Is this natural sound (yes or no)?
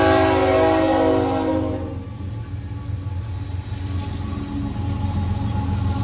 yes